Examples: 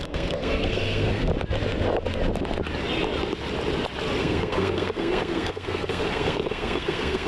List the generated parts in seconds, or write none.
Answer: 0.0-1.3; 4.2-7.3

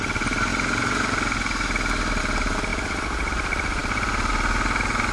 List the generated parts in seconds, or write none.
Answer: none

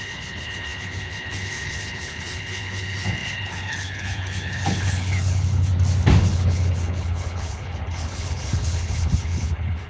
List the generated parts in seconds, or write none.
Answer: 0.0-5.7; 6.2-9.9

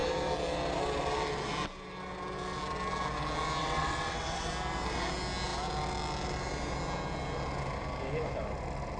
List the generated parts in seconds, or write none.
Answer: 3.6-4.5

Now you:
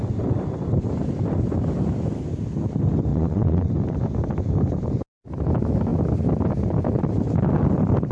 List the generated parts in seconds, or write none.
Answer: 3.1-3.7

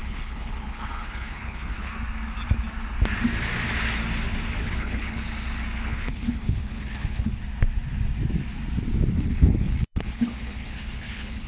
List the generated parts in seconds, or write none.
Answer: 0.0-1.9; 4.6-5.2; 5.8-7.4; 9.1-11.5

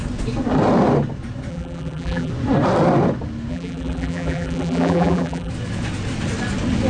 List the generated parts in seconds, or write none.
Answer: 1.5-2.3; 3.5-5.5

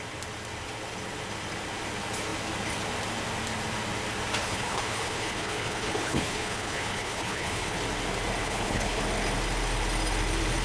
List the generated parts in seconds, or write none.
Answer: 4.4-7.8; 8.4-9.0